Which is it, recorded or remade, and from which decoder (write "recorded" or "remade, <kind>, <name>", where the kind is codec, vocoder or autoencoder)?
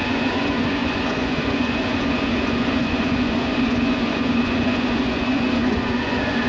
remade, vocoder, Vocos